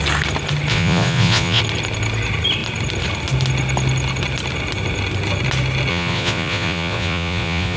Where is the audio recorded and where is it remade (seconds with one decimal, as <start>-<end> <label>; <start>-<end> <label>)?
0.0-0.7 recorded; 0.7-1.6 remade; 1.6-5.9 recorded; 5.9-7.8 remade